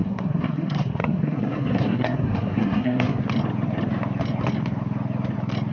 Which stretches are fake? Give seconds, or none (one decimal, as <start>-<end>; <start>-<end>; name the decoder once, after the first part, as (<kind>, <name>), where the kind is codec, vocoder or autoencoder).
0.0-3.2 (codec, SNAC)